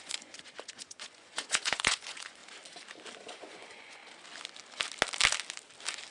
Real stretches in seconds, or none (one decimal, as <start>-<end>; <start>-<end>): 2.4-3.3; 4.0-6.1